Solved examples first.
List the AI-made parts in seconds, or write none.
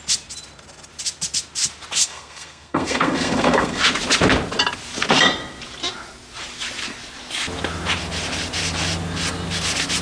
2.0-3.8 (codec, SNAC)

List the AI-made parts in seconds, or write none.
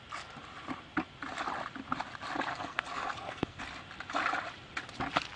2.5-3.6 (codec, SNAC)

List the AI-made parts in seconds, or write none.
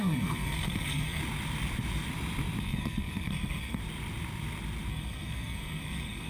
0.0-1.2 (codec, SNAC); 2.6-3.8; 4.9-6.3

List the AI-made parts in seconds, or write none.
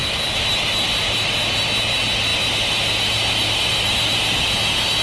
none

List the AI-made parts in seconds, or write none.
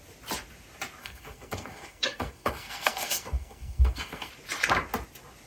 1.0-4.3 (codec, SNAC)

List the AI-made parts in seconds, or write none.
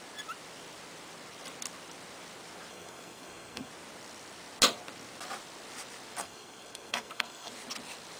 2.7-3.7 (codec, SNAC); 6.2-7.5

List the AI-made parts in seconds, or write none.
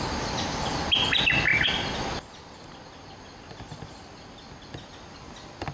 none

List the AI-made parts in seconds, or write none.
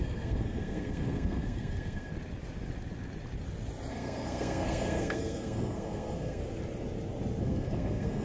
0.0-2.1 (codec, SNAC); 3.9-6.4; 7.4-8.2